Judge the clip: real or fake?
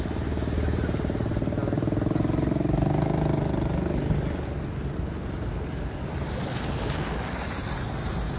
real